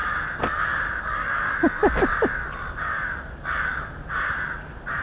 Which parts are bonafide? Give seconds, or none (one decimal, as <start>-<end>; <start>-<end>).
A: 0.0-5.0